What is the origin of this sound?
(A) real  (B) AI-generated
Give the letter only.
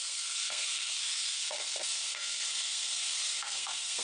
B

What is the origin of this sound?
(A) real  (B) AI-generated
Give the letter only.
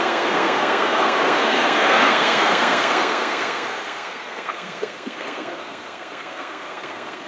B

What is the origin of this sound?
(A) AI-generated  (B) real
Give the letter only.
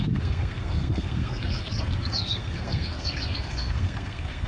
A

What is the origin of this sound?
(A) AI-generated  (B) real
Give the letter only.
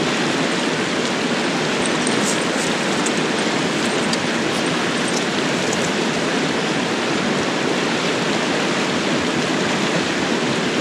B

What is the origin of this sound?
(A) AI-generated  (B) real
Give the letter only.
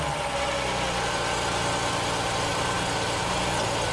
B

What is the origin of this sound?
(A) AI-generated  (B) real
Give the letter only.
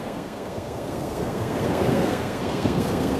A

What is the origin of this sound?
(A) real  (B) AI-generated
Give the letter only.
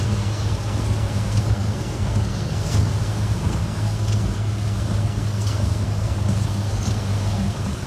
B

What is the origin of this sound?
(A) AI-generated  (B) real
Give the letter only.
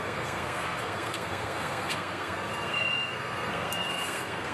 A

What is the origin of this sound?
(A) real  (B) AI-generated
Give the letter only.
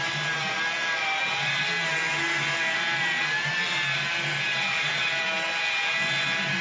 A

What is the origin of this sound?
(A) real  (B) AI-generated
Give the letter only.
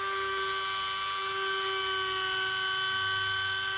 A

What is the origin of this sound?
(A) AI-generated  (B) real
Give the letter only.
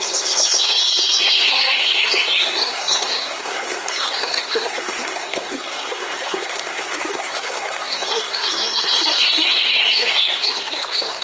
A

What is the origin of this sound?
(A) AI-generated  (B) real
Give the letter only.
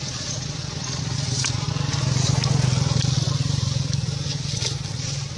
B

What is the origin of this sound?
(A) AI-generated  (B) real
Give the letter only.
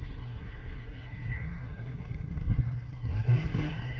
A